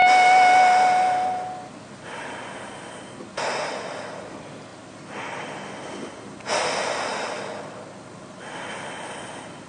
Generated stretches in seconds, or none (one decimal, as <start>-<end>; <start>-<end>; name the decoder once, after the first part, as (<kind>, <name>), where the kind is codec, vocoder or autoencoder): none